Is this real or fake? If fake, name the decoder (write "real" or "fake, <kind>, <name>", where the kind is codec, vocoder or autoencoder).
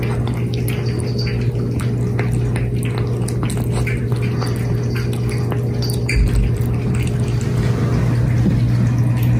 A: real